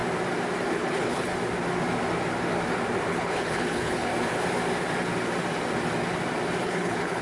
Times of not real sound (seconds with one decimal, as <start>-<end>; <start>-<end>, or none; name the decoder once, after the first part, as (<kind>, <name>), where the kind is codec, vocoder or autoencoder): 0.7-1.3 (codec, HILCodec); 3.1-4.1; 6.6-7.2